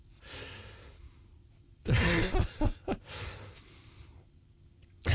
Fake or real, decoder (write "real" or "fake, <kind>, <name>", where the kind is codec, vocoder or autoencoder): real